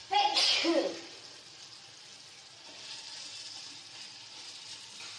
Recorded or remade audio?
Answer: recorded